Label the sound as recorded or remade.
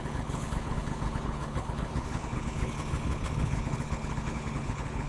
remade